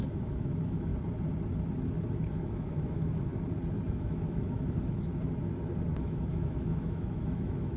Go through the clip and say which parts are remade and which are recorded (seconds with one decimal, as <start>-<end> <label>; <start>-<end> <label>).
0.0-0.9 remade; 0.9-2.3 recorded; 2.3-3.3 remade; 3.3-3.9 recorded; 3.9-5.1 remade; 5.1-6.0 recorded; 6.0-7.8 remade